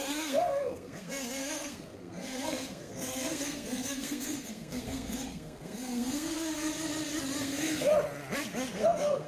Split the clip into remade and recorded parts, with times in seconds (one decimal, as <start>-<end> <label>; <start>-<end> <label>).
0.0-6.7 remade; 6.7-7.4 recorded; 7.4-7.9 remade; 7.9-8.7 recorded; 8.7-9.3 remade